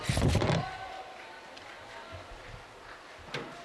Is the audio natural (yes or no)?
yes